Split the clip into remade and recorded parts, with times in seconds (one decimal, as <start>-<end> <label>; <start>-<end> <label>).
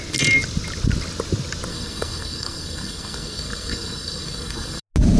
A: 0.0-1.7 recorded; 1.7-4.8 remade; 4.8-5.2 recorded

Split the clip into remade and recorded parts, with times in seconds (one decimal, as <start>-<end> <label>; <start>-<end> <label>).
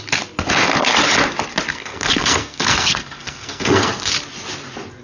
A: 0.0-1.7 recorded; 1.7-4.1 remade; 4.1-5.0 recorded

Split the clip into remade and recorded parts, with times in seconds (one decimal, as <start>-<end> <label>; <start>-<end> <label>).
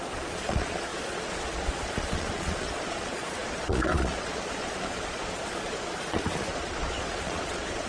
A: 0.0-7.9 remade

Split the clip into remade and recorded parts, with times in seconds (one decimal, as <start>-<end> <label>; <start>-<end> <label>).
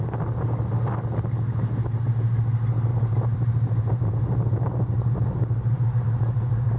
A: 0.0-2.9 recorded; 2.9-6.0 remade; 6.0-6.8 recorded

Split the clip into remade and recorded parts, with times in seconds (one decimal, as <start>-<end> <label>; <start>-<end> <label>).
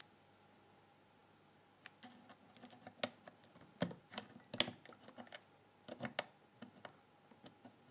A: 0.0-7.9 recorded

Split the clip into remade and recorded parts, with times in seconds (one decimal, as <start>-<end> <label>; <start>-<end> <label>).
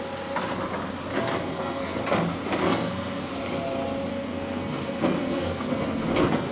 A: 0.0-1.5 recorded; 1.5-2.0 remade; 2.0-2.6 recorded; 2.6-3.3 remade; 3.3-4.1 recorded; 4.1-6.5 remade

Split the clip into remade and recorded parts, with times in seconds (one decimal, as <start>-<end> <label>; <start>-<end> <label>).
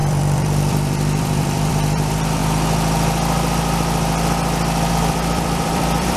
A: 0.0-2.4 remade; 2.4-4.9 recorded; 4.9-6.2 remade